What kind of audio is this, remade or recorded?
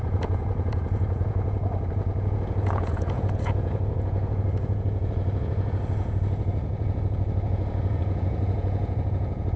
remade